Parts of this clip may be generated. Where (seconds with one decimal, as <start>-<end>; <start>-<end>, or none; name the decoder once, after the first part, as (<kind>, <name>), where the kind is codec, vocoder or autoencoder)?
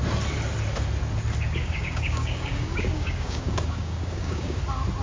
1.6-4.6 (codec, DAC)